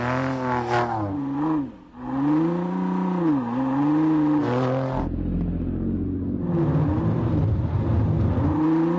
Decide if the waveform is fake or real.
real